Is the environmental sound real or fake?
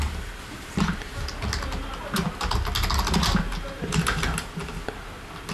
real